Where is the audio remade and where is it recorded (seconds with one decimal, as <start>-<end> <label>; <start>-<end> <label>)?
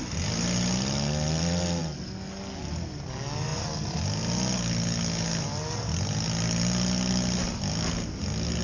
0.0-8.6 recorded